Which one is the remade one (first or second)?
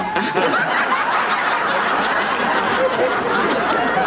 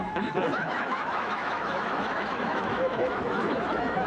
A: second